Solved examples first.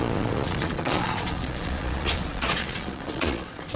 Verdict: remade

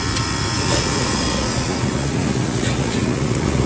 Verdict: remade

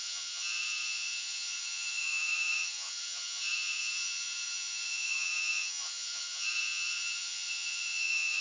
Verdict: remade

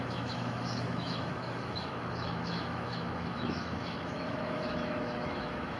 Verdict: remade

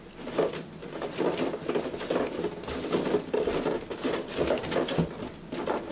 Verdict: recorded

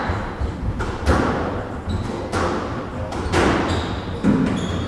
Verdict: recorded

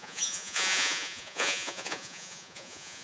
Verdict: remade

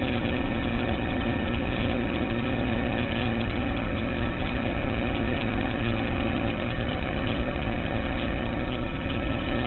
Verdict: remade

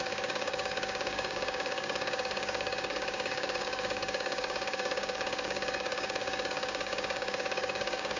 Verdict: remade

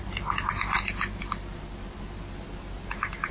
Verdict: recorded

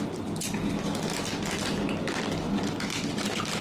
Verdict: recorded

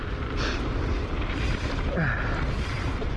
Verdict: recorded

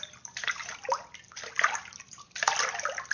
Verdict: recorded